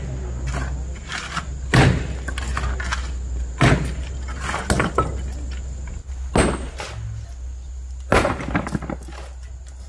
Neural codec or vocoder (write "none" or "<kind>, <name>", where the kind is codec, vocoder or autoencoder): none